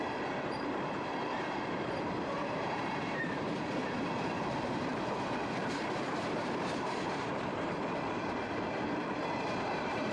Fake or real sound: fake